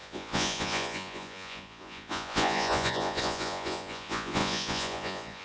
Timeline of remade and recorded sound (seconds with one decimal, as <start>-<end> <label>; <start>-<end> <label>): 0.0-5.4 remade